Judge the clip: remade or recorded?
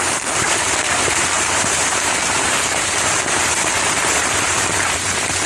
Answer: remade